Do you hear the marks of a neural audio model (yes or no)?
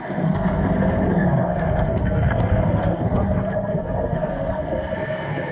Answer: yes